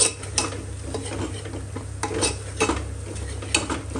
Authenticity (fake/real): real